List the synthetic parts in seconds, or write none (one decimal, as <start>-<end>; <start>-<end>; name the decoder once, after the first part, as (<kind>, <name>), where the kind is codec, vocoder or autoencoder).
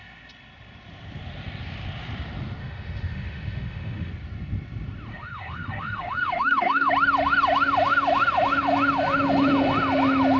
2.6-4.1 (autoencoder, DAC-VAE); 5.1-6.9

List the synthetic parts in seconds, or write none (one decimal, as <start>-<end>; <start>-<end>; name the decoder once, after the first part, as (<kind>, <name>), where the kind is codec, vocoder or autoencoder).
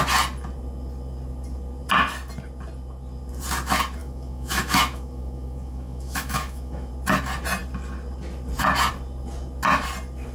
4.0-6.9 (autoencoder, DAC-VAE)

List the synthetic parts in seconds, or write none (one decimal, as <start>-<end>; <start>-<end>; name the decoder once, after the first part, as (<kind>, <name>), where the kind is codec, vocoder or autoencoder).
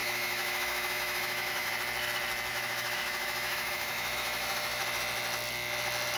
0.0-1.7 (autoencoder, DAC-VAE); 2.5-4.8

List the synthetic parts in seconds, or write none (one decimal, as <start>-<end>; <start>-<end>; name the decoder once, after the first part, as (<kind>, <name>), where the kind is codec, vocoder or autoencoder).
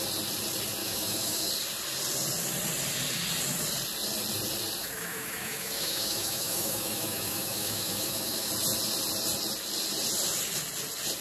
0.8-1.5 (autoencoder, DAC-VAE); 4.8-8.5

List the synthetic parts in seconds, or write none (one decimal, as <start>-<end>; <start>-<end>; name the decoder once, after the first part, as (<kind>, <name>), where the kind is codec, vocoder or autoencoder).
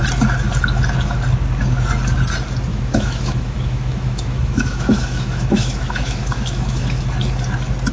2.7-7.0 (autoencoder, DAC-VAE)